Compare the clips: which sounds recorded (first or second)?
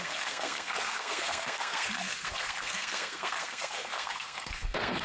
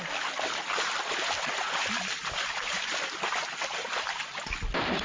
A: second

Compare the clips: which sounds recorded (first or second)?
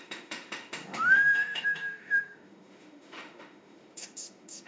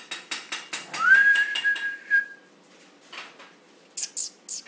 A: second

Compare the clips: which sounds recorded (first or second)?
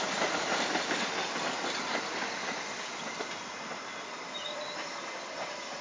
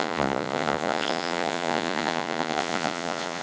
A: first